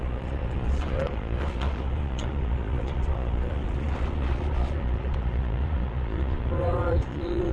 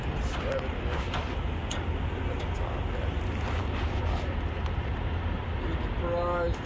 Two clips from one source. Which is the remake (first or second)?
first